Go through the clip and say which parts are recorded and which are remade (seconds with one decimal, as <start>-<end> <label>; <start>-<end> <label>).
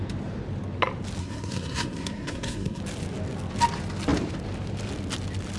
0.0-1.2 recorded; 1.2-2.8 remade; 2.8-5.6 recorded